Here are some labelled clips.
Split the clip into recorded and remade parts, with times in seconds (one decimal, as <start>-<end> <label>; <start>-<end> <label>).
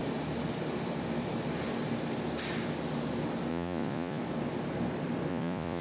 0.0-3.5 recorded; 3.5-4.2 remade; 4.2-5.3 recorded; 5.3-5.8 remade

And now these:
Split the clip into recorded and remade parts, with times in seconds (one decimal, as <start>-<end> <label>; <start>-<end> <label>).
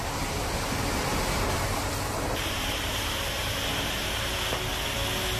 0.0-1.1 recorded; 1.1-4.3 remade; 4.3-5.4 recorded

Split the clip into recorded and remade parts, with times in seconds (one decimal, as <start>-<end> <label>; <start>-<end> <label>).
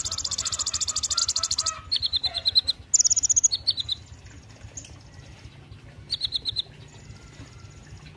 0.0-1.2 recorded; 1.2-1.8 remade; 1.8-8.2 recorded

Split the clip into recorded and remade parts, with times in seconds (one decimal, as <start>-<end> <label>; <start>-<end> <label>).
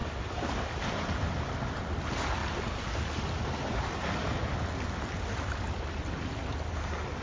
0.0-7.2 recorded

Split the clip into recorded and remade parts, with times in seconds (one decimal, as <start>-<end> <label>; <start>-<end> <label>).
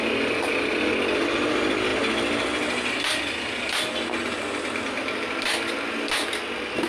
0.0-6.9 recorded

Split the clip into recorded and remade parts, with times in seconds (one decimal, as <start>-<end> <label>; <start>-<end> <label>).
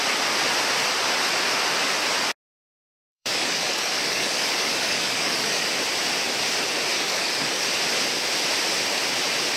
0.0-2.8 recorded; 2.8-5.7 remade; 5.7-6.9 recorded; 6.9-7.6 remade; 7.6-9.6 recorded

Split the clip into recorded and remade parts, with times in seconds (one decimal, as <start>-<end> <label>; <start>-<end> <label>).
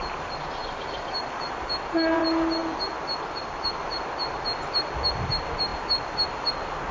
0.0-0.6 recorded; 0.6-2.2 remade; 2.2-6.9 recorded